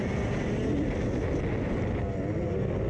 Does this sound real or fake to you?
real